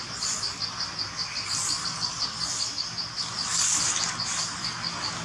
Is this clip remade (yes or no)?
no